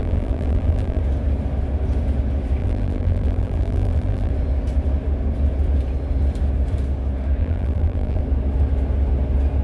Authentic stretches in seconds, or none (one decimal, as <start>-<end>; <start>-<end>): 1.0-2.6; 4.3-7.4; 8.2-9.6